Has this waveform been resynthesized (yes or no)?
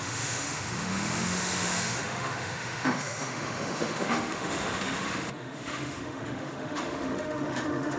yes